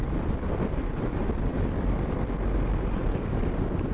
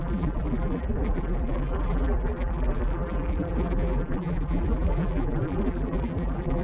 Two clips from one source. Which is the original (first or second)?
first